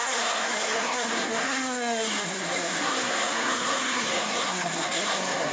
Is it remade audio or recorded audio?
remade